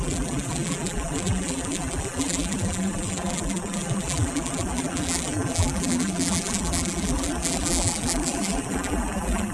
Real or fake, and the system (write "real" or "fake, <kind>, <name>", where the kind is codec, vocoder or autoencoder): fake, vocoder, BigVGAN v2